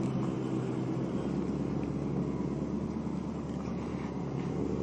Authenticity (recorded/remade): recorded